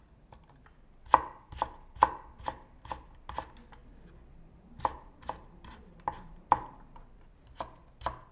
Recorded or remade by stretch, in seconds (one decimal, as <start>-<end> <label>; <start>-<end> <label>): 0.0-3.8 recorded; 3.8-7.6 remade; 7.6-8.3 recorded